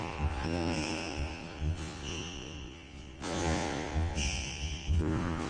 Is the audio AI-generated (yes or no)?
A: yes